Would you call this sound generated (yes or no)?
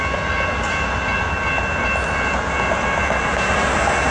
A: no